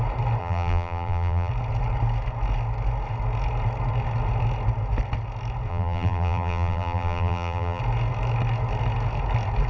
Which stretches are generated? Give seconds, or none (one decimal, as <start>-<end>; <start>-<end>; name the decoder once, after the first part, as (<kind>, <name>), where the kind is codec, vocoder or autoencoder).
0.4-1.5 (vocoder, BigVGAN v2); 5.7-7.8